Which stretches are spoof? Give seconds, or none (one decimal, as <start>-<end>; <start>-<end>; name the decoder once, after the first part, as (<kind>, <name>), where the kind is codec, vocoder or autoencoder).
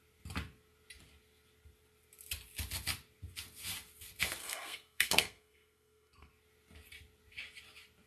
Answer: 4.4-6.3 (codec, SNAC)